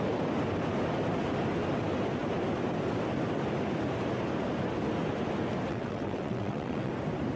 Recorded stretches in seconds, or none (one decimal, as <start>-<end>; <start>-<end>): 0.0-5.7; 6.9-7.4